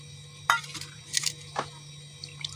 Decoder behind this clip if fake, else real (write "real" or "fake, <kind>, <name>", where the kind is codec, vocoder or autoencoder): real